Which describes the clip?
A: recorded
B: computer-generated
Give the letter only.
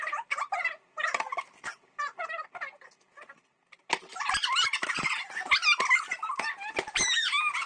A